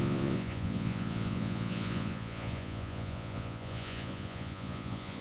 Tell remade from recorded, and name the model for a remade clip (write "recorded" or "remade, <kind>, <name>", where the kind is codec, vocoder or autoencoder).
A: remade, vocoder, Vocos